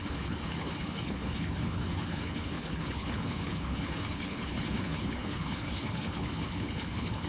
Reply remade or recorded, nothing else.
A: remade